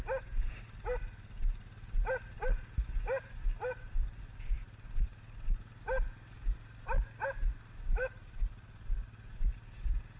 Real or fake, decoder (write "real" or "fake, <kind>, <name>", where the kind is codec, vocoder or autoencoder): real